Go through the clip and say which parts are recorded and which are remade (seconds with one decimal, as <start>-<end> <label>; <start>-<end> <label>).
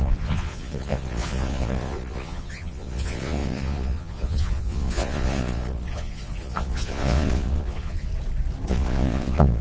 0.0-8.1 remade; 8.1-8.7 recorded; 8.7-9.6 remade